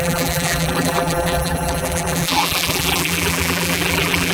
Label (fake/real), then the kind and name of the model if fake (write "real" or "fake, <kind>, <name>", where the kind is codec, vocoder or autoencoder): fake, vocoder, BigVGAN v2